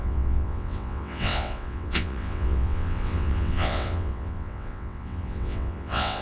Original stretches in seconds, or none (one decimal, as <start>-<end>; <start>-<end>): none